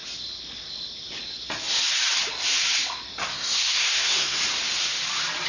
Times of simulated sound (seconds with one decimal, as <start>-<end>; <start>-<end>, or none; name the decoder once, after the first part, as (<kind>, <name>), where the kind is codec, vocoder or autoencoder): 3.3-4.4 (codec, SNAC)